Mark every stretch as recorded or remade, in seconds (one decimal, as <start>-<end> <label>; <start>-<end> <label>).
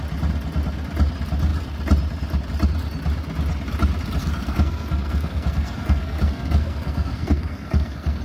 0.0-4.2 recorded; 4.2-8.2 remade